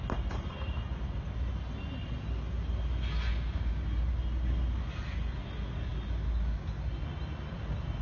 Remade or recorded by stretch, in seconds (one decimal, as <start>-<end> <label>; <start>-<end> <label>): 0.0-8.0 recorded